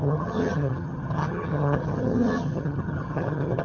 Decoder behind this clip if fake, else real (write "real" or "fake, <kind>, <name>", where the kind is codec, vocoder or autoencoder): fake, vocoder, HiFi-GAN